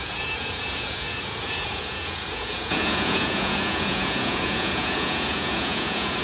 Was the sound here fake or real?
fake